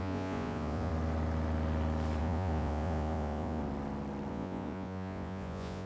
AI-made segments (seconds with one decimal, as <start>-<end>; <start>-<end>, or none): 0.0-0.9; 2.2-3.6; 4.3-5.9